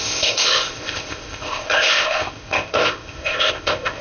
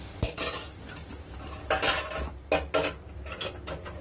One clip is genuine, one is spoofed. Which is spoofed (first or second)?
first